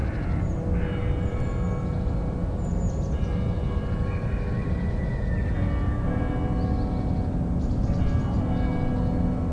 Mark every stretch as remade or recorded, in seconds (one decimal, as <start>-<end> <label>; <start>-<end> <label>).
0.0-9.5 recorded